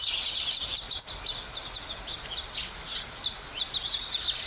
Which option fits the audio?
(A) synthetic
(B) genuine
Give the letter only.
B